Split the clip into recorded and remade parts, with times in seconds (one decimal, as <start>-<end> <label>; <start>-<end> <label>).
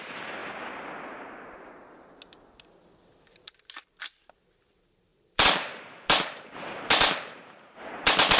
0.0-5.1 recorded; 5.1-7.8 remade; 7.8-8.4 recorded